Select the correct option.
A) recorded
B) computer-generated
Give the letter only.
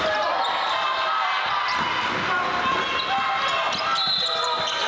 A